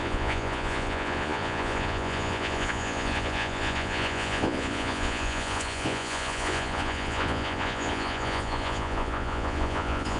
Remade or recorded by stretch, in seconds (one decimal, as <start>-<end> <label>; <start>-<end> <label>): 0.0-10.2 remade